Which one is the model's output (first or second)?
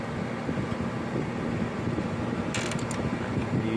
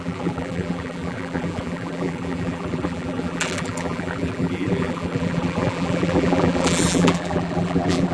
second